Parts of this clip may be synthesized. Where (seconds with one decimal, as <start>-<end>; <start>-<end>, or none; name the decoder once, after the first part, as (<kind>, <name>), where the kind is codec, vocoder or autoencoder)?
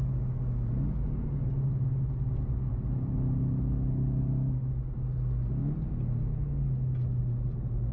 none